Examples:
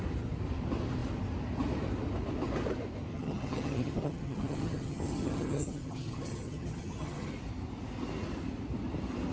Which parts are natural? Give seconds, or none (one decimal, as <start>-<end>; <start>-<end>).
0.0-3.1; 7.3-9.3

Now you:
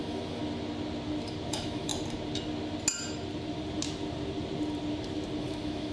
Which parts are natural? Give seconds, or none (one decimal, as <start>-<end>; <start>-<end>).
0.4-1.5; 1.9-5.4

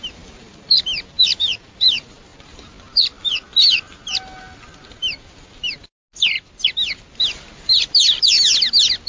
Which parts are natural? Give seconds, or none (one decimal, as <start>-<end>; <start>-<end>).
0.0-9.1

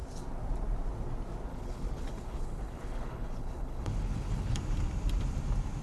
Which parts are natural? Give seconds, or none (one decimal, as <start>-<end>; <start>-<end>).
0.0-1.5; 4.6-5.8